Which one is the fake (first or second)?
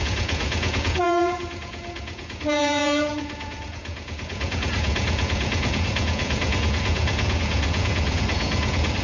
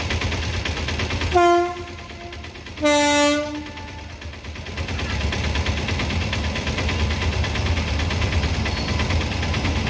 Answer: first